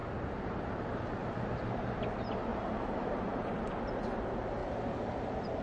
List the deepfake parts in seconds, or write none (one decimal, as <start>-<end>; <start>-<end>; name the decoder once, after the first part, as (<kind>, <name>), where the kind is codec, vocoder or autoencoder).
0.0-2.0 (vocoder, BigVGAN v2); 2.5-3.7; 4.6-5.6